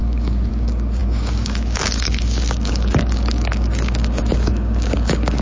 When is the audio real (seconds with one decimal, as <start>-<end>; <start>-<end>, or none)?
none